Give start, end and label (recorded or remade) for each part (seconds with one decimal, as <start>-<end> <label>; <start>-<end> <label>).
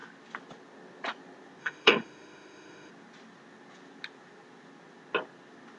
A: 0.0-1.6 recorded; 1.6-2.9 remade; 2.9-5.8 recorded